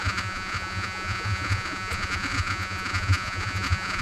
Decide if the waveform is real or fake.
fake